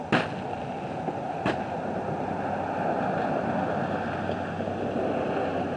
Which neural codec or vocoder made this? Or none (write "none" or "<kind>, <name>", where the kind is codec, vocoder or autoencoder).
none